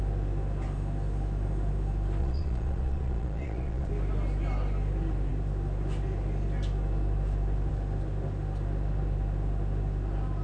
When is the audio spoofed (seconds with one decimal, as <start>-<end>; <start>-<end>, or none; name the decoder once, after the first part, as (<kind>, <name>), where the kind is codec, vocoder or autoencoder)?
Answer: 2.2-3.9 (vocoder, Vocos)